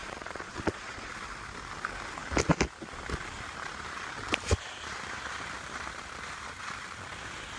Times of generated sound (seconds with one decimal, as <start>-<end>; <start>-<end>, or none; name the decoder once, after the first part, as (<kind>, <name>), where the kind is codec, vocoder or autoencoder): 0.0-1.1 (vocoder, Vocos)